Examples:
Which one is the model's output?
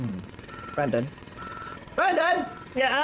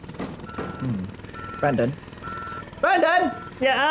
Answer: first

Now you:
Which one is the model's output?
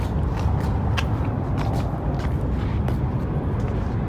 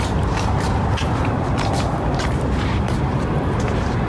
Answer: second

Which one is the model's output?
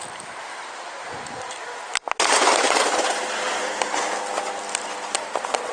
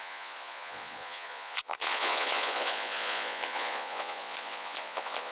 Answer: second